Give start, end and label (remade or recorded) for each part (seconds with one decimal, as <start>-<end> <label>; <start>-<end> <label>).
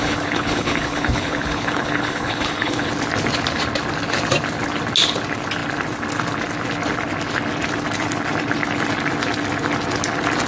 0.0-2.9 remade; 2.9-10.5 recorded